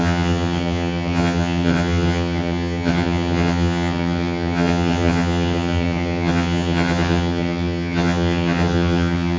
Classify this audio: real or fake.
fake